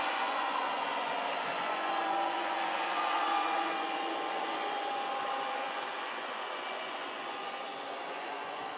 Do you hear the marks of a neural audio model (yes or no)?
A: yes